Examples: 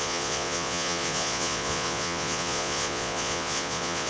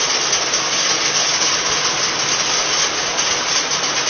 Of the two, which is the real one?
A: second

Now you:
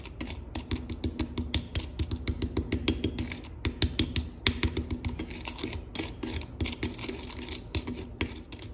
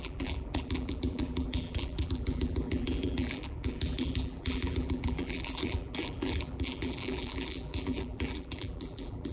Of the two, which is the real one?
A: first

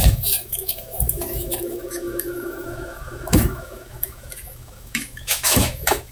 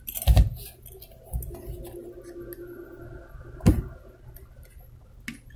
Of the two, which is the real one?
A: second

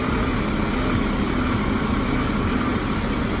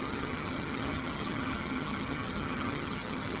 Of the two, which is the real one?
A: first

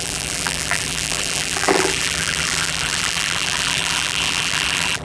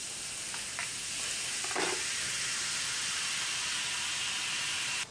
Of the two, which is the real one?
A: second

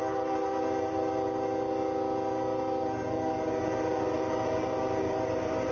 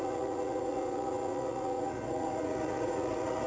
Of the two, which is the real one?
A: first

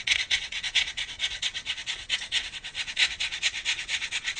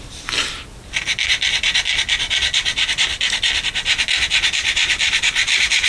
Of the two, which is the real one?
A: second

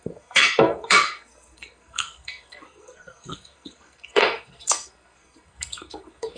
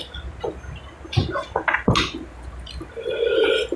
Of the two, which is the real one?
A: second